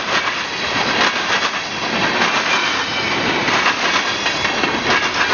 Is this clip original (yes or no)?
yes